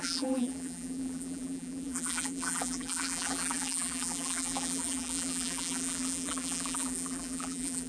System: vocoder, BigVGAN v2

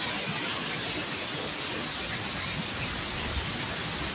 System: none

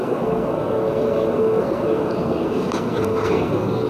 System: codec, SNAC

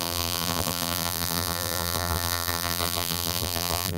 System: vocoder, BigVGAN v2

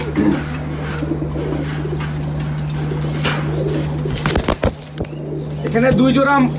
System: none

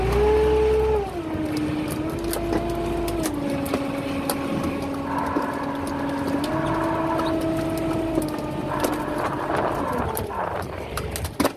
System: none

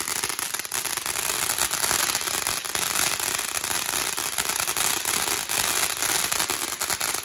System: none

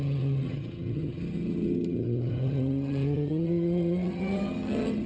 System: vocoder, HiFi-GAN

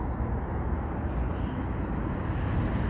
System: none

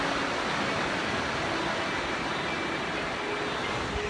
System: none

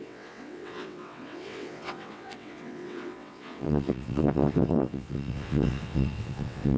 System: vocoder, WaveNeXt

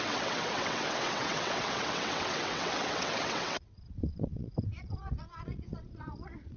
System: vocoder, WaveNeXt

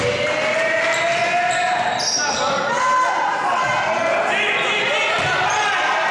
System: none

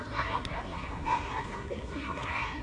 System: codec, SNAC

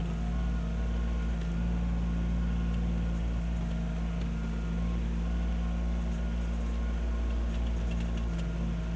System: none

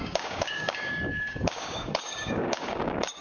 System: codec, DAC